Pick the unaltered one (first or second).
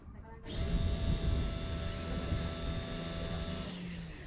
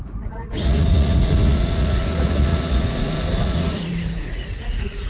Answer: first